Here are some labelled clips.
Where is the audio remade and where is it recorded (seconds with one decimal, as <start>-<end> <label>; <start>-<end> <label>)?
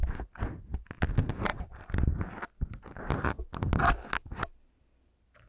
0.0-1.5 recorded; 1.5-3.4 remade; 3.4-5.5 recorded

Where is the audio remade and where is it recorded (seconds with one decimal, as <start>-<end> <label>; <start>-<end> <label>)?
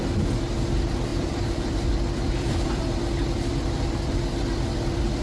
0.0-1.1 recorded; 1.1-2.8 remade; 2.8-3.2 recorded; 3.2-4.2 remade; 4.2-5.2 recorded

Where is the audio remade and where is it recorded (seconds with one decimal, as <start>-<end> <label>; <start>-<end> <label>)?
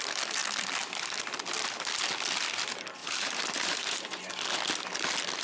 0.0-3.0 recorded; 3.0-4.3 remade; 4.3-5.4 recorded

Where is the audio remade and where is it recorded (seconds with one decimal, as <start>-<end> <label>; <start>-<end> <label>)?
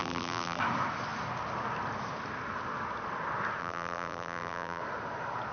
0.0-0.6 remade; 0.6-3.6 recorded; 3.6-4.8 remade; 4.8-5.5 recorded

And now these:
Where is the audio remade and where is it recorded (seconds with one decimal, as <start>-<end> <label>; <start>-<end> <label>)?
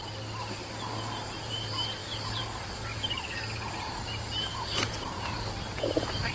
0.0-6.3 remade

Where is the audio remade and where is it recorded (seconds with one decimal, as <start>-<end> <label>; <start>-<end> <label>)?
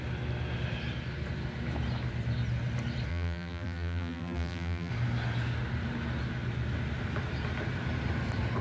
0.0-3.1 recorded; 3.1-4.9 remade; 4.9-8.6 recorded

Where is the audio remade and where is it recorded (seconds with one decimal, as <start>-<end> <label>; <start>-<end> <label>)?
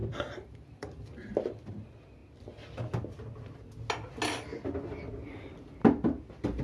0.0-1.7 remade; 1.7-6.6 recorded